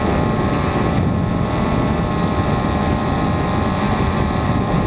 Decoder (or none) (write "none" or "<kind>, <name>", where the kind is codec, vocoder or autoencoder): none